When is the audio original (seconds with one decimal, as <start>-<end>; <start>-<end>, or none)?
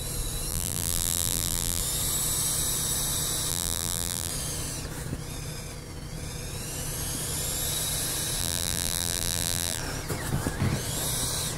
0.0-0.5; 1.8-3.5; 4.3-8.4; 9.8-11.6